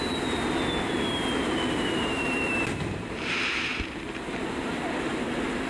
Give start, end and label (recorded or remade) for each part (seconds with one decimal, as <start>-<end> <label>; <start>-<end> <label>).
0.0-1.4 recorded; 1.4-4.8 remade; 4.8-5.7 recorded